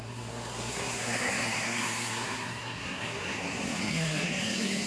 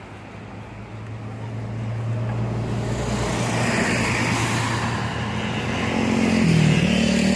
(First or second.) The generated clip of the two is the first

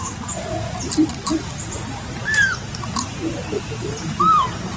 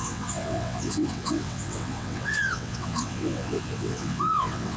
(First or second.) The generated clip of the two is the second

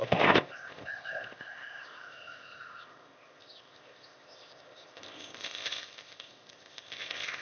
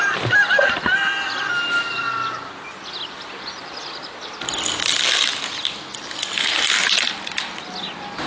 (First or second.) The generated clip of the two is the first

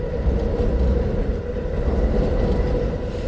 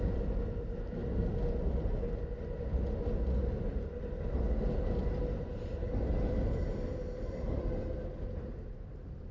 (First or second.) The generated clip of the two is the first